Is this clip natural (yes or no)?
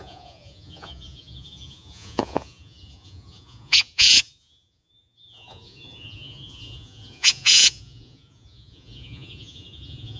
no